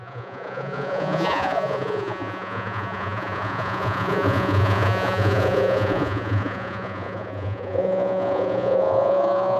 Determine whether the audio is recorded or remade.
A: remade